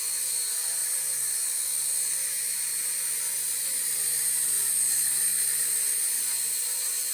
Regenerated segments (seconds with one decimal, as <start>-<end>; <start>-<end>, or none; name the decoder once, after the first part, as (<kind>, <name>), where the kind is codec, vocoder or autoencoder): none